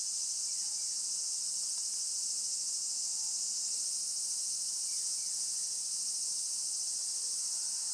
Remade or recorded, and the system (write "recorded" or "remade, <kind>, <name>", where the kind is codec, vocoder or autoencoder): recorded